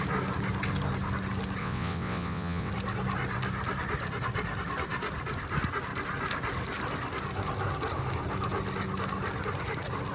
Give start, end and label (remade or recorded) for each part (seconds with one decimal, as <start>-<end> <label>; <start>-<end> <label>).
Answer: 0.0-1.6 recorded; 1.6-2.7 remade; 2.7-10.1 recorded